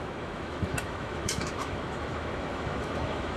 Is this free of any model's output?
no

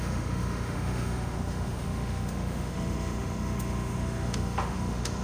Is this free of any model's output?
no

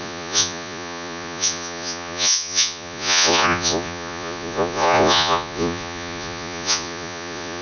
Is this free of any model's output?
no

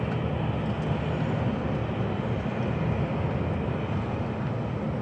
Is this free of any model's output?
yes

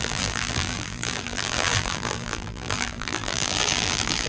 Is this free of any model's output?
no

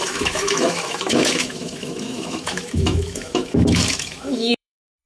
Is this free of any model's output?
no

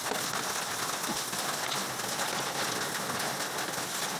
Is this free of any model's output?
yes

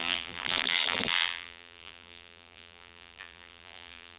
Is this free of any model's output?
no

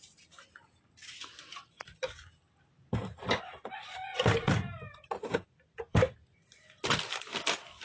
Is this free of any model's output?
yes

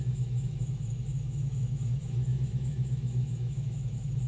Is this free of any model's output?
no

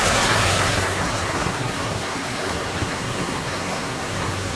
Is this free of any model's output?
no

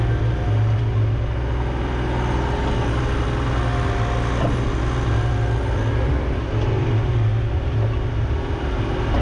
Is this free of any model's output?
yes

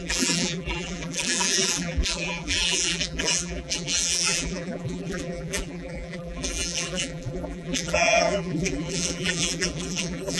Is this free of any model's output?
no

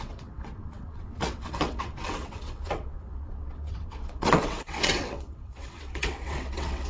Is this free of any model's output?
no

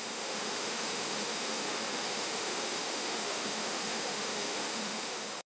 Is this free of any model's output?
no